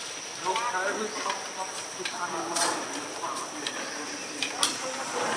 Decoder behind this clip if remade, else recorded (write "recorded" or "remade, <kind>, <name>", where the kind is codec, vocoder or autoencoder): recorded